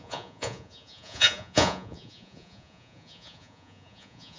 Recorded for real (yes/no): no